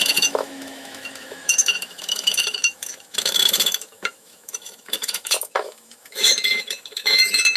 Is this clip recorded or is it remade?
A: remade